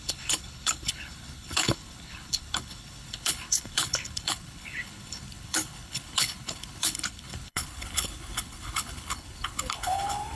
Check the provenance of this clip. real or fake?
fake